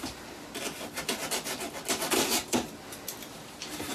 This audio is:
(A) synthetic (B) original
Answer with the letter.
B